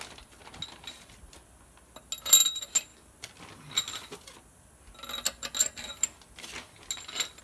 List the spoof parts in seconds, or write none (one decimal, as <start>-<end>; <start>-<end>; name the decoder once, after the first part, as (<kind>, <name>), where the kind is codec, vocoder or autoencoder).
none